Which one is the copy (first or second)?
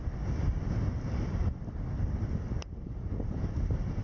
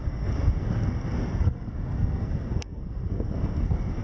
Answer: second